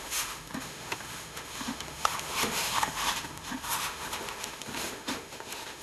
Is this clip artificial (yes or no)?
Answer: yes